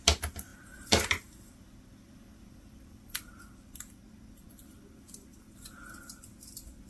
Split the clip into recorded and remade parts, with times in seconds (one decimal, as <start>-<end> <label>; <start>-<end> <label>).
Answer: 0.0-0.5 recorded; 0.5-3.7 remade; 3.7-6.9 recorded